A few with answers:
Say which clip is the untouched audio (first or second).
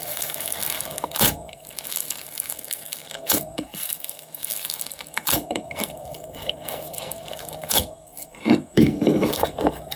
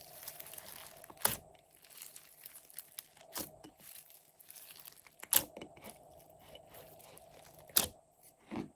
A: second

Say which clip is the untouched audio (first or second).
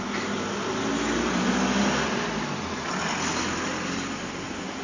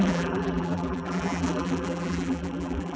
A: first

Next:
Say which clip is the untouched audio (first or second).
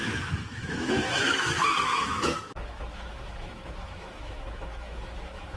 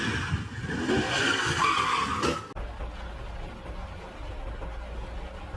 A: second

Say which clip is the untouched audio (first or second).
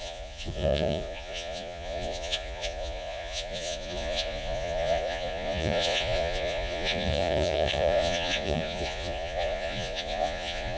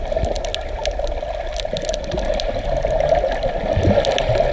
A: second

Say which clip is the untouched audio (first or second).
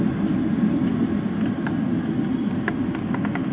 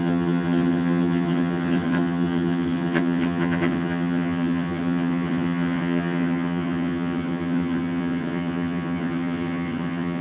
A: first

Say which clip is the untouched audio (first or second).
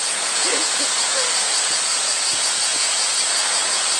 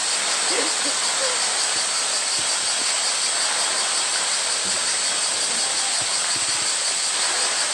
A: second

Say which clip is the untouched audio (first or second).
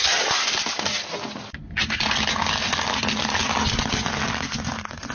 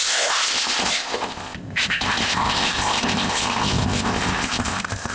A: first